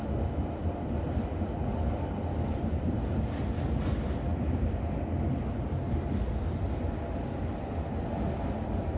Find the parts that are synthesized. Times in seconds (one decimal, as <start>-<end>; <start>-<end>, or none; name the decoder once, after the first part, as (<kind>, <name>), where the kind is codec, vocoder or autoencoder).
none